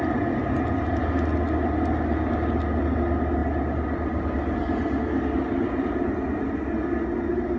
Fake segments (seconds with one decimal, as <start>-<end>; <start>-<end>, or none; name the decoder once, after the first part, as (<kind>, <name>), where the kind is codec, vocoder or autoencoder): none